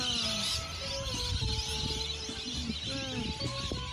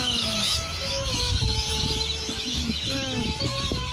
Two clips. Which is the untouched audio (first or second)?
first